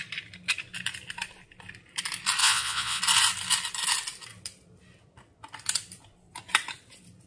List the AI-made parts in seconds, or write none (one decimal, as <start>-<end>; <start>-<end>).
2.4-3.0